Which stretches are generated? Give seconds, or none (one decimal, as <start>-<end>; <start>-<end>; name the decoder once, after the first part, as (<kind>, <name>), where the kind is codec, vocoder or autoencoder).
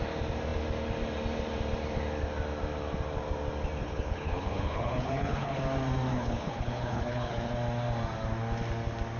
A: 3.8-5.6 (codec, HILCodec); 6.1-7.5